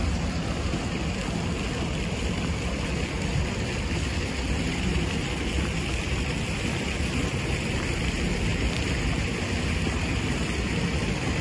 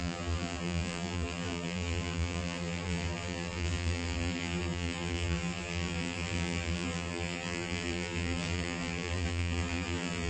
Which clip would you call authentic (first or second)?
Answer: first